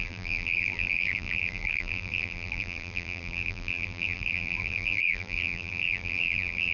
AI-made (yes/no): yes